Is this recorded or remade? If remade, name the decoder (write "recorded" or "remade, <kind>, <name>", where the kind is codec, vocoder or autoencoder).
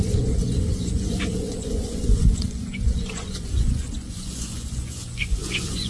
remade, vocoder, Vocos